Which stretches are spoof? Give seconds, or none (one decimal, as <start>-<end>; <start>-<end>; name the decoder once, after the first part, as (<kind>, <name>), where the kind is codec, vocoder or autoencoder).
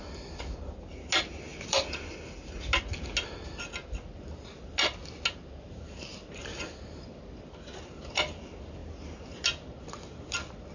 1.5-2.5 (vocoder, BigVGAN v2)